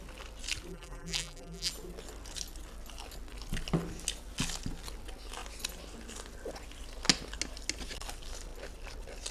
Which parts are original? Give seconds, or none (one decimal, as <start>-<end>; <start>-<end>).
0.0-0.7; 1.7-9.3